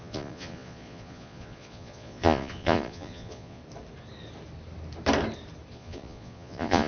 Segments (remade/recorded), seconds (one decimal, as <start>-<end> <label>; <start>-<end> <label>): 0.0-3.6 remade; 3.6-5.7 recorded; 5.7-6.9 remade